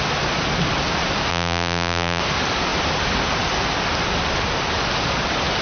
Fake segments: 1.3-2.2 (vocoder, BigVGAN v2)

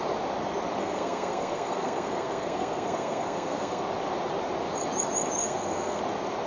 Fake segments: 0.8-3.8 (codec, SNAC); 5.4-6.0

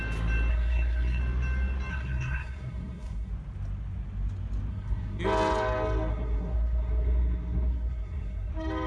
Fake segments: 0.5-1.2 (codec, SNAC); 1.9-3.3; 4.7-5.2; 6.1-8.5

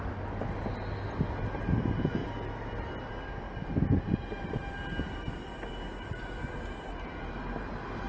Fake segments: none

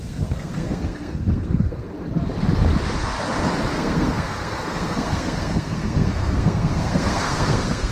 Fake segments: 0.0-1.9 (codec, SNAC); 3.7-7.9

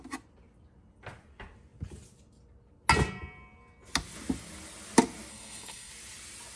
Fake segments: 5.3-5.9 (codec, SNAC)

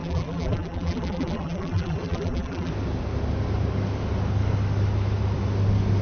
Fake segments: 0.0-2.7 (vocoder, BigVGAN v2)

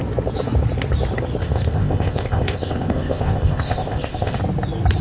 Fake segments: 1.4-4.4 (codec, ZipCodec)